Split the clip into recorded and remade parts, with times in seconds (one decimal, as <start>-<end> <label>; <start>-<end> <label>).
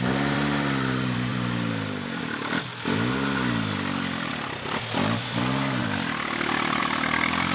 0.0-2.7 remade; 2.7-4.3 recorded; 4.3-7.5 remade